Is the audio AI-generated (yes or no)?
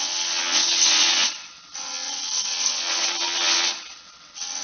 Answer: yes